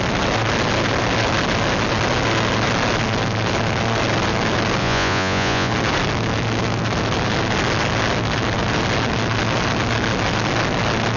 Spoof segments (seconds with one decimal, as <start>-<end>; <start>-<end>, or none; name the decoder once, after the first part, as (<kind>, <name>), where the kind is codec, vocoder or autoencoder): 4.8-5.7 (vocoder, Vocos)